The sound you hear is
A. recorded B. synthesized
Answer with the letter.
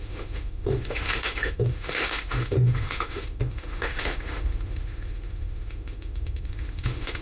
B